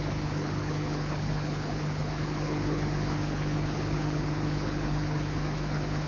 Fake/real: fake